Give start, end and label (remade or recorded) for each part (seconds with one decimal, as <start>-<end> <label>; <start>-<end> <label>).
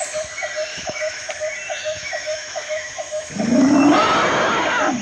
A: 0.0-0.7 recorded; 0.7-1.3 remade; 1.3-1.8 recorded; 1.8-3.3 remade; 3.3-5.0 recorded